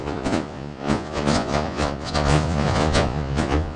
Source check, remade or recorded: remade